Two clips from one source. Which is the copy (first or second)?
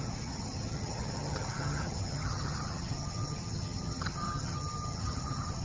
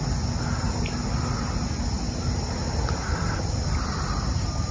first